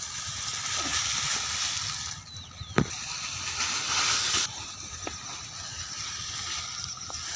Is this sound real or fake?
real